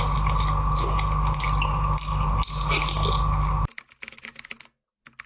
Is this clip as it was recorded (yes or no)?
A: yes